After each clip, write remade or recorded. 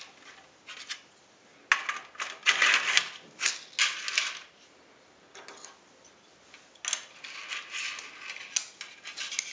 recorded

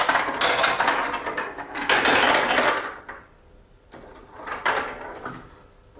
recorded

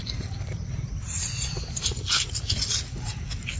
recorded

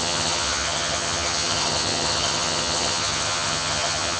remade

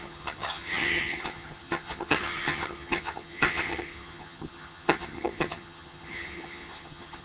remade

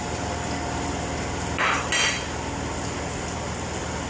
recorded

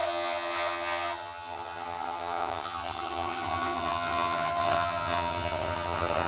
remade